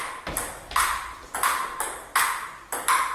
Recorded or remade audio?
recorded